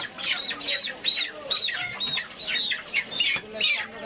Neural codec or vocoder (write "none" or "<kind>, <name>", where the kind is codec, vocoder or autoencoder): none